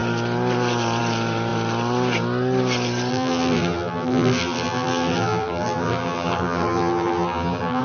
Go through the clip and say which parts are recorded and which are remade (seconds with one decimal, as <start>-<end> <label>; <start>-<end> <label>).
0.0-3.1 recorded; 3.1-7.8 remade